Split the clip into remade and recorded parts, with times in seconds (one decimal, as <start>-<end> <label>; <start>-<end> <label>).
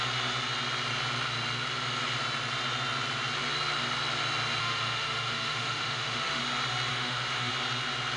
0.0-4.6 recorded; 4.6-6.4 remade; 6.4-6.9 recorded; 6.9-7.5 remade; 7.5-8.2 recorded